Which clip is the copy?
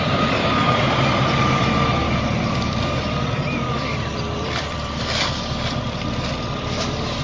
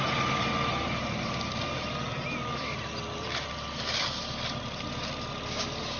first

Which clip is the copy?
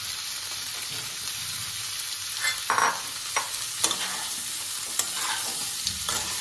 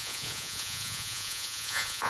second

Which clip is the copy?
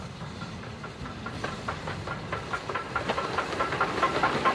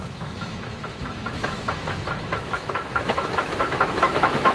second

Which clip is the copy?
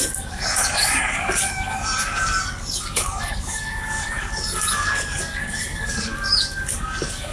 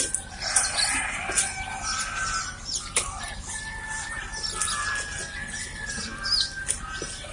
first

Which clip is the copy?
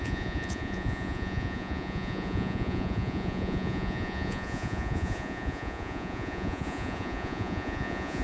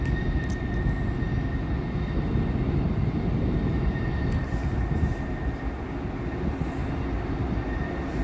first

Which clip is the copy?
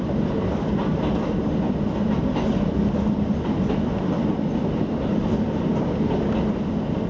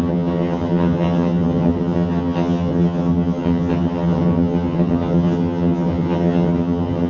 second